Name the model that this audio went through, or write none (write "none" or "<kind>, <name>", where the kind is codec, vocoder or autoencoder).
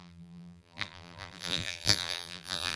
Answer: vocoder, BigVGAN v2